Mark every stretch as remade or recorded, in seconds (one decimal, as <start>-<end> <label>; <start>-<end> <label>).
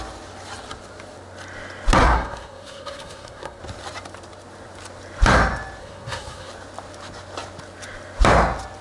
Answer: 0.0-2.0 recorded; 2.0-3.6 remade; 3.6-5.8 recorded; 5.8-6.5 remade; 6.5-8.8 recorded